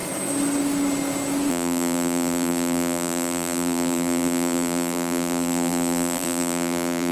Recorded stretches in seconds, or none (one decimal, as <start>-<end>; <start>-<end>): 0.0-1.5